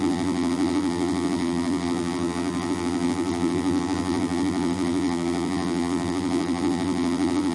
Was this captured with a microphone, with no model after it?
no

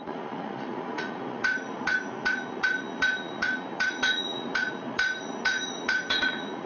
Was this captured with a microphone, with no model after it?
no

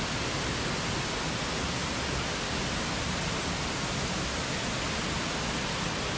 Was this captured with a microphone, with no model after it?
yes